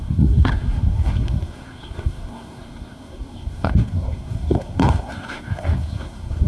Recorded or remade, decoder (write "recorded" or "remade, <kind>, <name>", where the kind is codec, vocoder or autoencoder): remade, codec, SNAC